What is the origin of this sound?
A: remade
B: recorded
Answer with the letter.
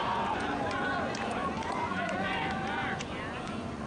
A